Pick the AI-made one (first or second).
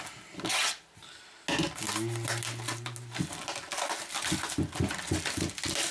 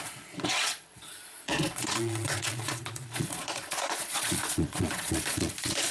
second